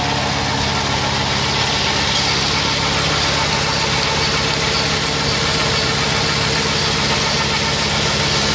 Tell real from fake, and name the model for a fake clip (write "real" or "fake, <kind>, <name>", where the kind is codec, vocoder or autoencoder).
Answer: real